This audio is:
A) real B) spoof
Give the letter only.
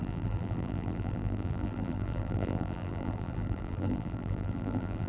B